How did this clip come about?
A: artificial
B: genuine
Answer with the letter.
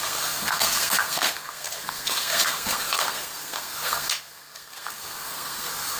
A